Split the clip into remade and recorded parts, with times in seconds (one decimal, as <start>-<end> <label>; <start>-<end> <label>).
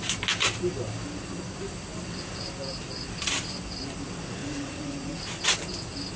0.0-4.4 recorded; 4.4-5.2 remade; 5.2-6.2 recorded